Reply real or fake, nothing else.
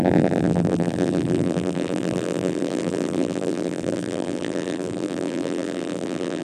fake